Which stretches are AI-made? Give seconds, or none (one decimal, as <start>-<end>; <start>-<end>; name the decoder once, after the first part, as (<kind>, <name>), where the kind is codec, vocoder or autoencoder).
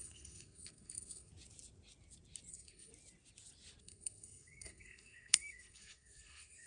0.0-1.3 (codec, SNAC); 2.5-2.9; 3.8-6.7